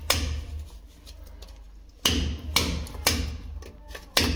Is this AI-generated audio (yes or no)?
no